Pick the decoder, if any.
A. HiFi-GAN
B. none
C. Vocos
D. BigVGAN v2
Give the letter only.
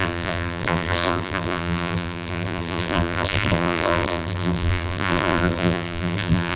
D